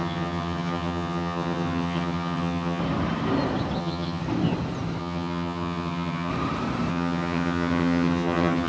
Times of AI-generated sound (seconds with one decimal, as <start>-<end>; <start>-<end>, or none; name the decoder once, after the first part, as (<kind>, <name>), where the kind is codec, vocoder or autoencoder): 0.0-2.8 (vocoder, HiFi-GAN); 3.8-4.2; 5.0-6.3; 6.9-8.7